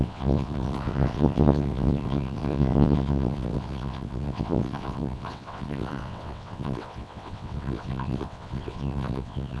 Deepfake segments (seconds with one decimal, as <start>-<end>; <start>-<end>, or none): 0.0-9.6